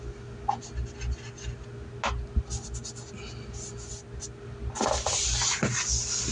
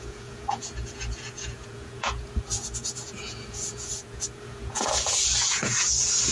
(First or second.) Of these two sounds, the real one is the first